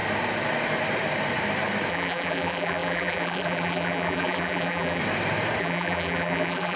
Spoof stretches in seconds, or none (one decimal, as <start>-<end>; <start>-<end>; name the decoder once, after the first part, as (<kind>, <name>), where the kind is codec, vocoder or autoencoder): 1.9-5.0 (vocoder, BigVGAN v2); 5.6-6.8